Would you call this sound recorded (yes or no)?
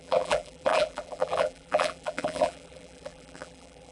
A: no